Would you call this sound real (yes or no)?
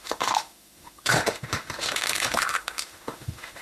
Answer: no